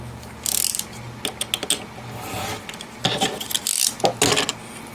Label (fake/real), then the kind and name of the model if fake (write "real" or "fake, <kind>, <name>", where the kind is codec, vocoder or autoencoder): real